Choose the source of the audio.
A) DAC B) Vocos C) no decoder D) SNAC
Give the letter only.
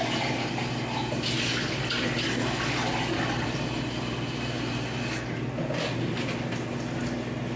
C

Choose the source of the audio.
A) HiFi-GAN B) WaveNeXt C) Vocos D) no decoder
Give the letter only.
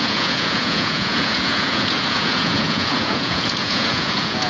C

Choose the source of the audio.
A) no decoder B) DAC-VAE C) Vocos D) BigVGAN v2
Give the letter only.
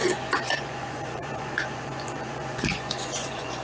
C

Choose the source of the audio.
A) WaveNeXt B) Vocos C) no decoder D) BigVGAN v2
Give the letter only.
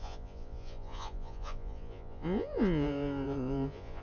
B